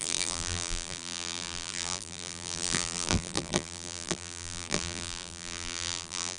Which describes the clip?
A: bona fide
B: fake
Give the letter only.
B